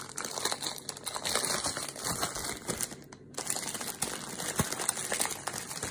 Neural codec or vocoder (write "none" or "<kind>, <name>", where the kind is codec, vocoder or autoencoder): none